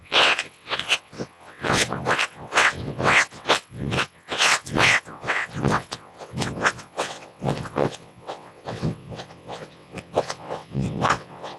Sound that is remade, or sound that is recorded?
remade